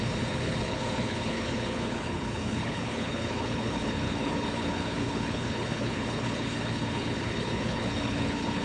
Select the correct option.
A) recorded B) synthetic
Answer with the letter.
B